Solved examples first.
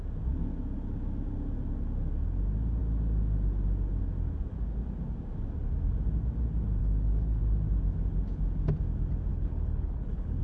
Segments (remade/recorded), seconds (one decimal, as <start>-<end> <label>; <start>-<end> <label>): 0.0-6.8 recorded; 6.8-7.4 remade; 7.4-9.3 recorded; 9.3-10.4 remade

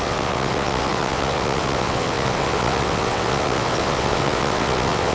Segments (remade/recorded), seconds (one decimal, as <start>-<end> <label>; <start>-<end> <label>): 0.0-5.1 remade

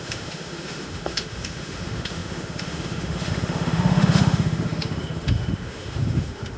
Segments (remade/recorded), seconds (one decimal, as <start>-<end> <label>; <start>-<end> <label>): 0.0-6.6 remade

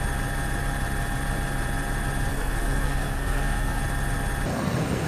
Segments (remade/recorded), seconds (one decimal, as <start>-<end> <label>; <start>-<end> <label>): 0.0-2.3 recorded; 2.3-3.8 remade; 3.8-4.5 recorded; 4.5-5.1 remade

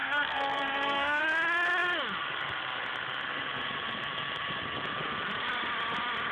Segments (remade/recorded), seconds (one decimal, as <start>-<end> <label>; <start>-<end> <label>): 0.0-1.2 remade; 1.2-6.3 recorded

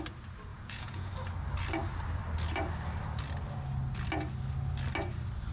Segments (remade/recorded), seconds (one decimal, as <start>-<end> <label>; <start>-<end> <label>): 0.0-0.5 recorded; 0.5-1.1 remade; 1.1-5.5 recorded